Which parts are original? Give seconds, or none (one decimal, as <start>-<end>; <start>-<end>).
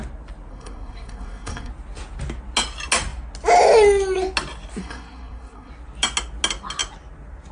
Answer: 0.0-0.5; 1.7-4.8; 5.7-7.5